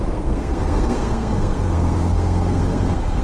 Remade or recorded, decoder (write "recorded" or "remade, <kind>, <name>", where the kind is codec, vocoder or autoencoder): remade, codec, SNAC